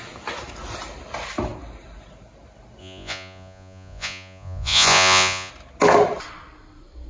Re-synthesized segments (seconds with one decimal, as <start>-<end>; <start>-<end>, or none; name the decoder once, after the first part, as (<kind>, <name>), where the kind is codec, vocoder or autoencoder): 2.8-5.5 (vocoder, Vocos)